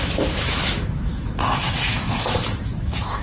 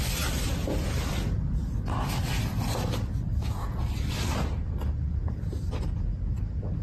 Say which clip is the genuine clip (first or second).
second